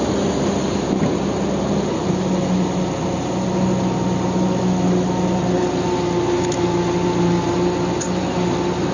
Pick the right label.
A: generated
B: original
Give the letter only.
B